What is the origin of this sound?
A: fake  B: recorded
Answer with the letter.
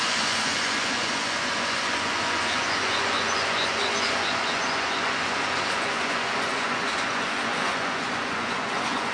A